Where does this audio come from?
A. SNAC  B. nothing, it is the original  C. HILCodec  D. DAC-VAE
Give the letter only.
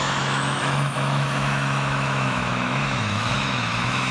D